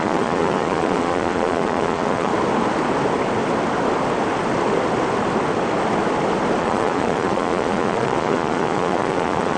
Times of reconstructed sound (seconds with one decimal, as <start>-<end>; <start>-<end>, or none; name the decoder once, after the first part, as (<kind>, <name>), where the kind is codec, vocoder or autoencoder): 0.0-2.3 (vocoder, Vocos); 6.6-9.6